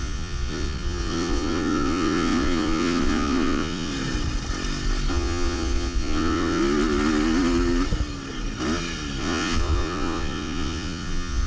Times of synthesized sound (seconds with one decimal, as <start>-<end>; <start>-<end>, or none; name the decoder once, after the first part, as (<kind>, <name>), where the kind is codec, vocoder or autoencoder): 0.0-3.9 (vocoder, Vocos); 5.1-6.6; 9.2-11.5